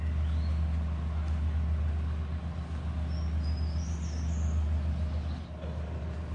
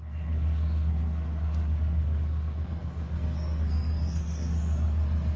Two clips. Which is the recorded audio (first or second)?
first